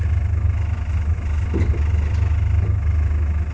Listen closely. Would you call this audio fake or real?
real